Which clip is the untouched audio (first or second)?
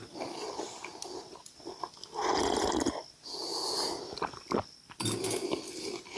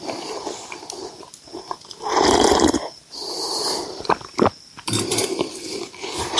first